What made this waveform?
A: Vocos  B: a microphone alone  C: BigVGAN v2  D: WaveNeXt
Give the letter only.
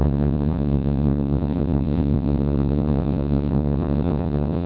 D